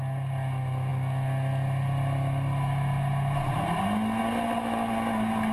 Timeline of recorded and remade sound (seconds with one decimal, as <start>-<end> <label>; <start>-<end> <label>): 0.0-5.5 recorded